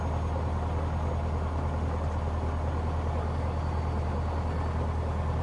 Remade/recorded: recorded